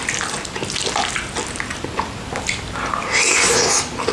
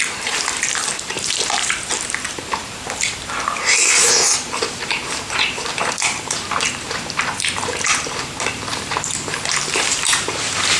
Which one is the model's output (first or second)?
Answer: second